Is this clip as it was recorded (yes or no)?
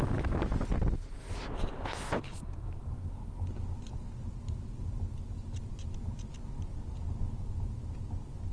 yes